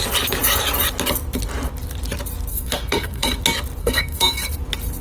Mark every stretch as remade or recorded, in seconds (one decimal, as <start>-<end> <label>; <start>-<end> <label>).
0.0-2.5 recorded; 2.5-3.4 remade; 3.4-3.8 recorded; 3.8-4.5 remade; 4.5-5.0 recorded